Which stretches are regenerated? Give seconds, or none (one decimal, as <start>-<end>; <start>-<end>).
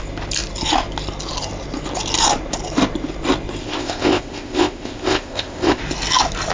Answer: 3.6-5.8